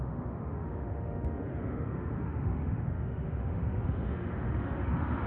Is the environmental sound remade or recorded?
remade